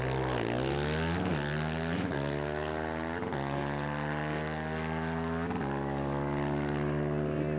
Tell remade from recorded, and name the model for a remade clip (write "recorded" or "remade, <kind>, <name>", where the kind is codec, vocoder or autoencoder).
recorded